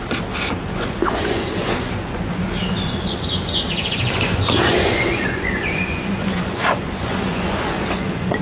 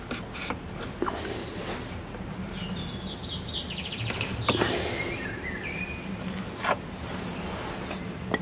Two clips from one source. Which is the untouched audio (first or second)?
second